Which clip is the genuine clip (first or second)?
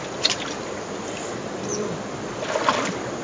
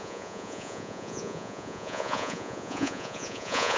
first